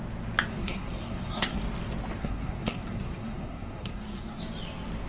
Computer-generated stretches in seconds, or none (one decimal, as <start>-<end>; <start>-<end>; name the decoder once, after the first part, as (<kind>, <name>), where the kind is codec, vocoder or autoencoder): 0.5-1.6 (codec, SNAC); 2.2-4.4